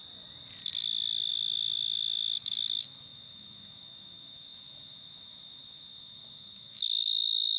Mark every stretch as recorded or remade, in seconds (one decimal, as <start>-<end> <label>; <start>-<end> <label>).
0.0-1.3 recorded; 1.3-7.6 remade